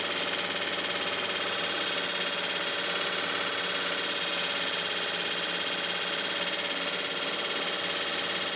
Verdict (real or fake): real